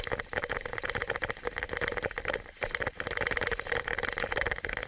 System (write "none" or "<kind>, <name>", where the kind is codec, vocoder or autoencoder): none